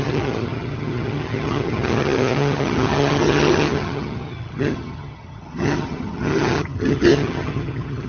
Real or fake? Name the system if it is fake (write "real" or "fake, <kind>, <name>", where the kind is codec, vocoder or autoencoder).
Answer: fake, vocoder, HiFi-GAN